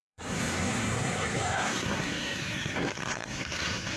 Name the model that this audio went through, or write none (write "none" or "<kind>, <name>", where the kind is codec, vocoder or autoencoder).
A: codec, SNAC